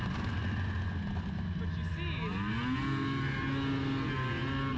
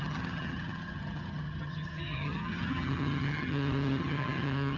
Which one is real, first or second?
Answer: first